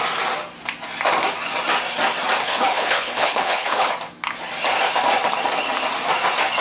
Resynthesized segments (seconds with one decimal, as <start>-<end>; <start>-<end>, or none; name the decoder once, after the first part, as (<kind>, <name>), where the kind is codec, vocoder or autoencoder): 2.4-3.9 (codec, HILCodec)

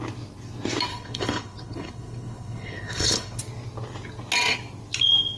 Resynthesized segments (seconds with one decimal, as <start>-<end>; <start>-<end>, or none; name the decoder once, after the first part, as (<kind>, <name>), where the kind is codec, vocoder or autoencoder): 0.9-3.4 (codec, HILCodec)

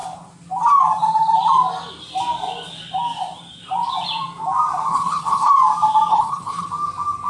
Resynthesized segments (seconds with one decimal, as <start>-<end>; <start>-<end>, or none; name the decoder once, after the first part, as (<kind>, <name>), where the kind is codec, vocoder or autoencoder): 4.9-5.5 (codec, HILCodec); 6.1-6.7

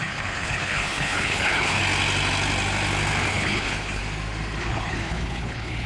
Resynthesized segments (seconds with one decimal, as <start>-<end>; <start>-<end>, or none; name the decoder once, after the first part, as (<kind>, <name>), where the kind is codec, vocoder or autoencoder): 0.0-1.8 (codec, HILCodec); 3.3-4.0; 4.6-5.9

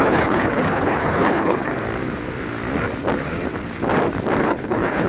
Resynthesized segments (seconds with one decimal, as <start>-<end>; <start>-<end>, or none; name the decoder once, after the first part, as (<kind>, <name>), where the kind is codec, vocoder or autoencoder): 0.0-1.7 (codec, HILCodec); 4.4-5.1

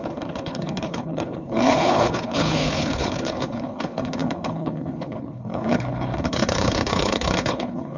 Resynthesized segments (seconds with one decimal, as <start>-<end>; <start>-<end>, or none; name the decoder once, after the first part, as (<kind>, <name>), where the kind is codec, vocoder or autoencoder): 0.0-8.0 (codec, HILCodec)

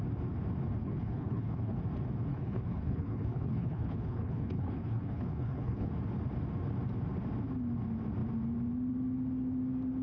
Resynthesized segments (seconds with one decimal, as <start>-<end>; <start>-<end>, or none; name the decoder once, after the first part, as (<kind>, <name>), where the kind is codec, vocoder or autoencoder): 0.8-1.8 (codec, HILCodec); 2.3-5.9

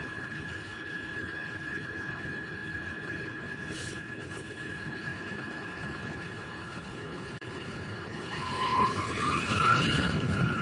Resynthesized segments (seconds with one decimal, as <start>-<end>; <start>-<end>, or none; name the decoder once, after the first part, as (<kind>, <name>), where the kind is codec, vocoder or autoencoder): 0.0-10.6 (codec, HILCodec)